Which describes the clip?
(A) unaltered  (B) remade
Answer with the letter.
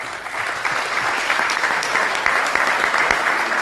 A